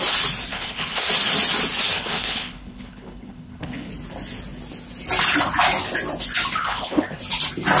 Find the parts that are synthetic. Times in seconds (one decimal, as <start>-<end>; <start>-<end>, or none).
0.5-1.1; 1.9-3.9; 6.6-7.2